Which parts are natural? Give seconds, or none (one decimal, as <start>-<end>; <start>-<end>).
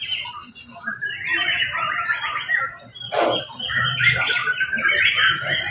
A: 0.4-3.8; 4.4-5.0